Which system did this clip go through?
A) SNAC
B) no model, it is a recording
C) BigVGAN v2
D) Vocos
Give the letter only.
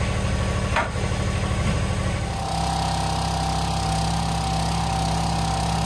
B